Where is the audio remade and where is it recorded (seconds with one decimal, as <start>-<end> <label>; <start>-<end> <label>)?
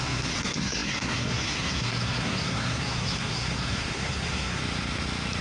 0.0-4.6 remade; 4.6-5.4 recorded